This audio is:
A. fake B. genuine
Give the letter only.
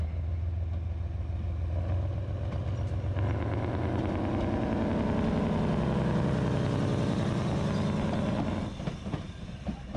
B